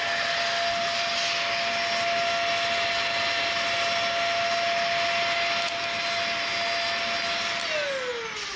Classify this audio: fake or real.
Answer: real